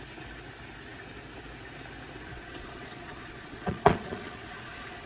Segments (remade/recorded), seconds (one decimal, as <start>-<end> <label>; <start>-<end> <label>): 0.0-2.3 recorded; 2.3-5.1 remade